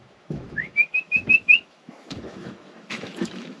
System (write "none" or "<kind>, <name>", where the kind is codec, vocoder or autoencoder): autoencoder, DAC-VAE